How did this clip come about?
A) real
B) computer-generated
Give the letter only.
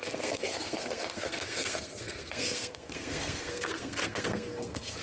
B